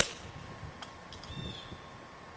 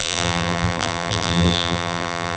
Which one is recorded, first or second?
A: first